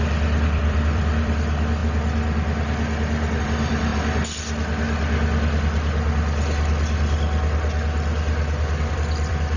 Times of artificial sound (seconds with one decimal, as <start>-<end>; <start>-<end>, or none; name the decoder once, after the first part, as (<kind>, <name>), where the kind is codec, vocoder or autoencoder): 0.0-1.8 (vocoder, BigVGAN v2); 3.4-3.9; 8.9-9.6